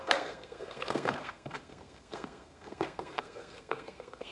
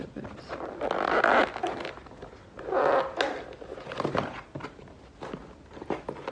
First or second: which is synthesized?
first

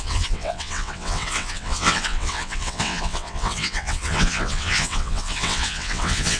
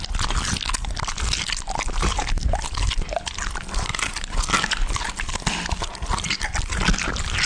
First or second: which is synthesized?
first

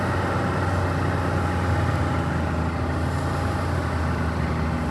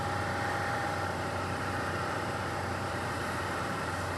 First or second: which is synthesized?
second